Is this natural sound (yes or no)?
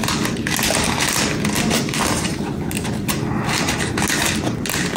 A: yes